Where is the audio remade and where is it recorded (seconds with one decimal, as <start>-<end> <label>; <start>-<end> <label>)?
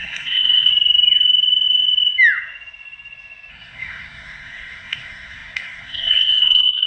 0.0-0.7 remade; 0.7-3.5 recorded; 3.5-6.9 remade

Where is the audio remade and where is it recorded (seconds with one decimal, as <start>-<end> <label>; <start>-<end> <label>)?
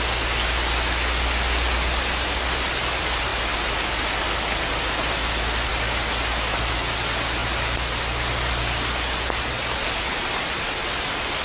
0.0-11.4 recorded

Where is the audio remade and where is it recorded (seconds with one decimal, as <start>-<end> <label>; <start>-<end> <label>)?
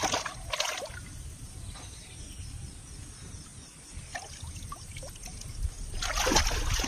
0.0-6.9 recorded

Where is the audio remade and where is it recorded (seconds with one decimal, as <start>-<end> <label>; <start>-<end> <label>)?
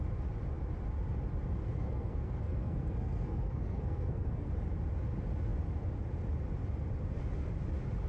0.0-1.6 recorded; 1.6-4.5 remade; 4.5-8.1 recorded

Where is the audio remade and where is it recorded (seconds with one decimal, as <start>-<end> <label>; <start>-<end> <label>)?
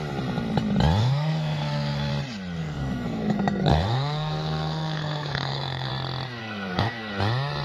0.0-1.0 recorded; 1.0-2.1 remade; 2.1-2.6 recorded; 2.6-5.9 remade; 5.9-6.4 recorded; 6.4-7.1 remade; 7.1-7.6 recorded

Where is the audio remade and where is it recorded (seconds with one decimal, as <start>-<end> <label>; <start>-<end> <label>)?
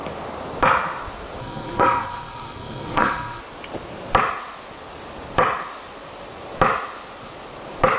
0.0-1.4 recorded; 1.4-3.4 remade; 3.4-8.0 recorded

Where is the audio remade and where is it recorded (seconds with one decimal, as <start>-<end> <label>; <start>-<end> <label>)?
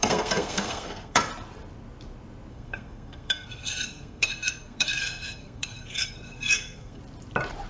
0.0-1.3 remade; 1.3-2.5 recorded; 2.5-7.0 remade; 7.0-7.7 recorded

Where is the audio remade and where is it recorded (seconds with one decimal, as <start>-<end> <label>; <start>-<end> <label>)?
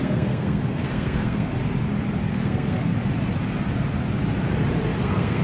0.0-1.5 remade; 1.5-2.3 recorded; 2.3-2.9 remade; 2.9-5.0 recorded; 5.0-5.4 remade